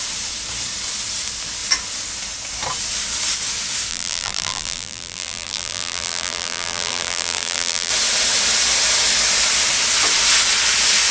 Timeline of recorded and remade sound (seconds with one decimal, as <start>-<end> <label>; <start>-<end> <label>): 0.0-3.9 recorded; 3.9-7.9 remade; 7.9-11.1 recorded